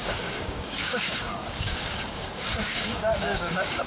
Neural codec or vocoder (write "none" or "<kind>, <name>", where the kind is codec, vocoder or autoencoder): codec, DAC